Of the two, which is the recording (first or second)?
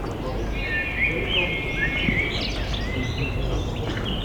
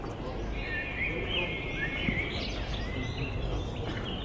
first